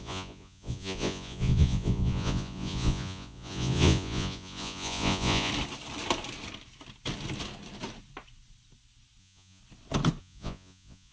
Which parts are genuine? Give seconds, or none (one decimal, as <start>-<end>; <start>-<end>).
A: 5.5-9.2; 9.6-10.2